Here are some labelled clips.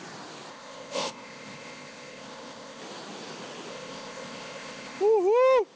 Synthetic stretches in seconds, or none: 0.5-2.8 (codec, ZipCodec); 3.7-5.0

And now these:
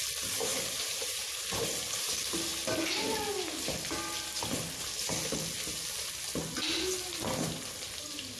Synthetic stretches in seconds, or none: 0.5-1.6 (vocoder, BigVGAN v2)